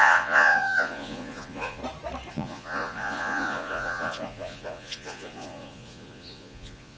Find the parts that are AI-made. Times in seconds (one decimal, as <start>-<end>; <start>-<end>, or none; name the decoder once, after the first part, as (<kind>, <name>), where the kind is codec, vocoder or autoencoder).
0.0-1.8 (vocoder, Vocos); 2.3-7.0